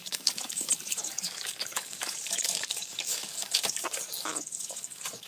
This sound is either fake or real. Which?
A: fake